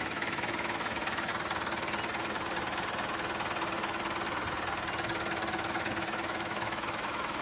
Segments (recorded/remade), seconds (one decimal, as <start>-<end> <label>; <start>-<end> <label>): 0.0-1.3 remade; 1.3-5.7 recorded; 5.7-7.4 remade